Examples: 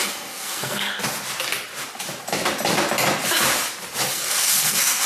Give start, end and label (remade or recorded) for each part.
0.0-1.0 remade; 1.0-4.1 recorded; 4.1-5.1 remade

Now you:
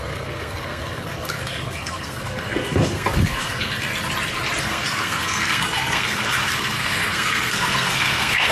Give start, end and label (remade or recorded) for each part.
0.0-3.9 remade; 3.9-4.6 recorded; 4.6-8.5 remade

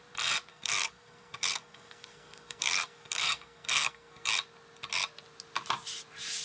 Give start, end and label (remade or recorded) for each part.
0.0-0.5 recorded; 0.5-4.3 remade; 4.3-6.4 recorded

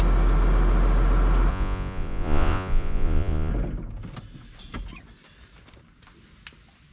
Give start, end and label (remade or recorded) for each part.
0.0-1.5 recorded; 1.5-3.5 remade; 3.5-6.9 recorded